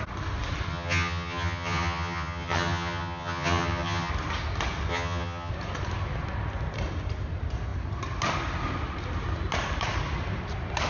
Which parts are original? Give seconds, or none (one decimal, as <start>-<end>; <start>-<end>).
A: 0.0-0.7; 4.1-4.9; 5.5-10.9